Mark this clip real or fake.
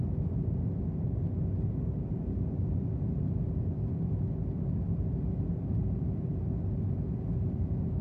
real